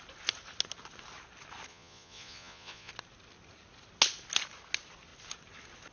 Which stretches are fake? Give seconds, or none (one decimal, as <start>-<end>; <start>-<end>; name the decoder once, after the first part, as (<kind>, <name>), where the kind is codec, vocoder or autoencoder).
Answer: 1.7-2.9 (vocoder, Vocos)